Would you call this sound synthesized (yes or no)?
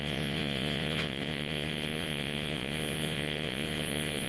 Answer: yes